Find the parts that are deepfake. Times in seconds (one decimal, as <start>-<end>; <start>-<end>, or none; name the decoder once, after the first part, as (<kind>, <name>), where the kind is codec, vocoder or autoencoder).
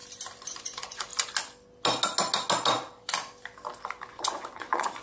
0.6-1.1 (vocoder, Vocos); 4.1-5.0